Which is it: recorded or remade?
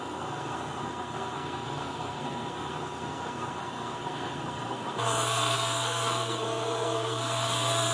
remade